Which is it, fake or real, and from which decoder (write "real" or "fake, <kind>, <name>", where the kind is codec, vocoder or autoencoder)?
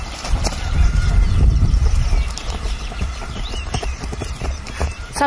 fake, vocoder, BigVGAN v2